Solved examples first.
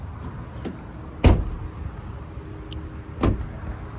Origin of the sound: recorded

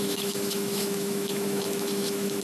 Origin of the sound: remade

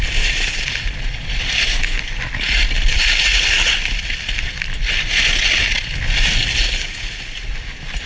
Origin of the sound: recorded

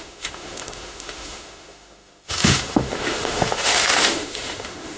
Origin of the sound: remade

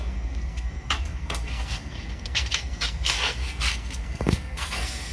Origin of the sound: remade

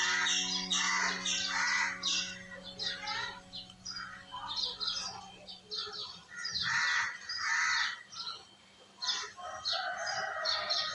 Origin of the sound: recorded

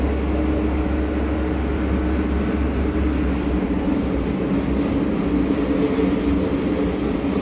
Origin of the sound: recorded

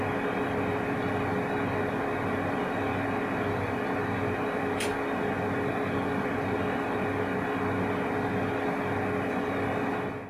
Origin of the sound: recorded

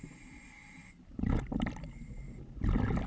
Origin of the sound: recorded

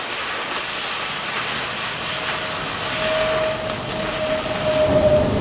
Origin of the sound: recorded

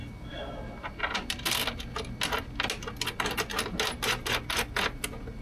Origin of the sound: recorded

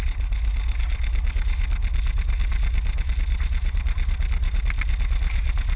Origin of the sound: recorded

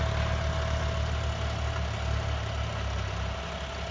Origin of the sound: recorded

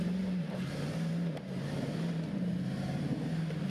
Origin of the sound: remade